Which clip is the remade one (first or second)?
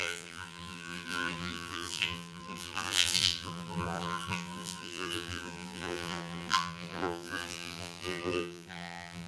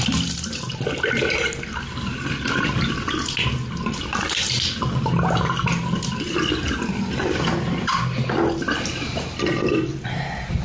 first